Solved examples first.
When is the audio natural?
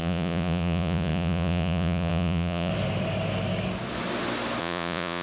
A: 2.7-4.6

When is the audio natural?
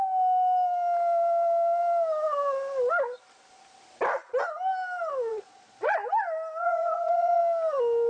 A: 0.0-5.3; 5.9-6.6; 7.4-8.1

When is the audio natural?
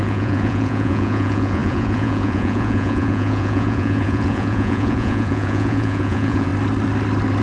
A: 6.5-7.4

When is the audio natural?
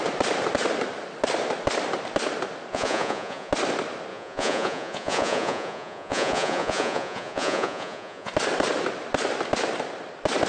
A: 0.0-2.7; 3.5-4.1; 8.3-10.5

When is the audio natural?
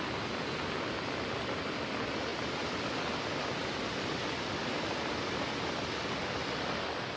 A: 0.0-7.2